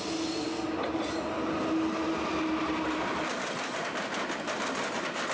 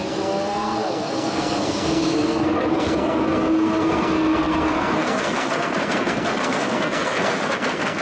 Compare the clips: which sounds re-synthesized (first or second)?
second